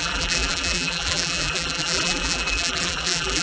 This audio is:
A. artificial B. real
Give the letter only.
A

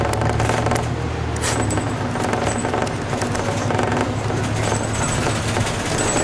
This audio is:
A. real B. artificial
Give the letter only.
A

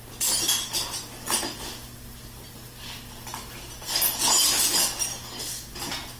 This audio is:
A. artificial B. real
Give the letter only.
B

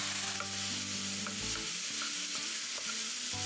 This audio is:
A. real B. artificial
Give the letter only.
A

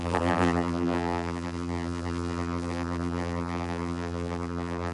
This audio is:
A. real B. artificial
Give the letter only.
B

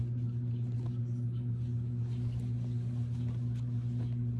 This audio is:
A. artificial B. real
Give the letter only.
B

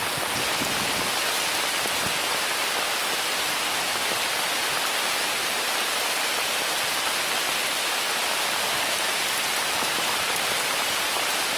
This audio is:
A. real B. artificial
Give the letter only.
A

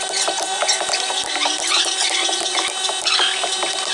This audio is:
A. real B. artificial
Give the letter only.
B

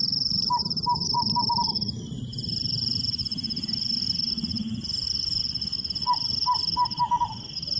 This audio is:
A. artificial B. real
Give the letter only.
A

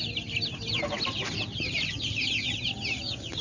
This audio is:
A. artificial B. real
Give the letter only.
B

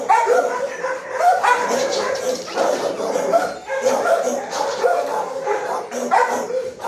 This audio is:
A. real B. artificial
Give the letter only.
B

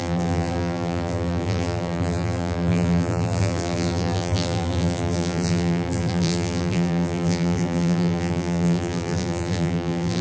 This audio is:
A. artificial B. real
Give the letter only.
A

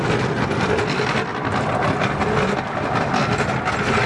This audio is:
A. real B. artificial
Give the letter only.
A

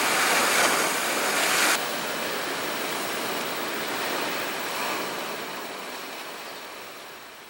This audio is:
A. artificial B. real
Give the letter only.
B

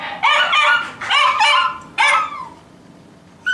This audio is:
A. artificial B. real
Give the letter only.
B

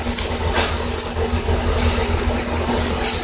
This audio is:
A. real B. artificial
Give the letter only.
A